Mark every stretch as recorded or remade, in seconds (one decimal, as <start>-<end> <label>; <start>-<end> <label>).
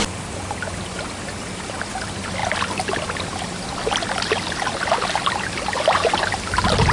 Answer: 0.0-6.9 recorded